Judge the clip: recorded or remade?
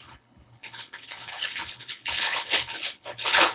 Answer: remade